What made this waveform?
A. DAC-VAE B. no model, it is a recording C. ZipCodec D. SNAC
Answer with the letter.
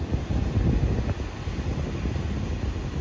B